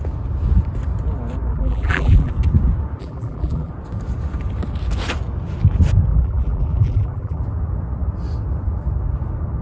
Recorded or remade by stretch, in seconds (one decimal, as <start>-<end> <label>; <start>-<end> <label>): 0.0-1.5 recorded; 1.5-2.3 remade; 2.3-3.0 recorded; 3.0-3.7 remade; 3.7-6.1 recorded; 6.1-7.4 remade; 7.4-9.6 recorded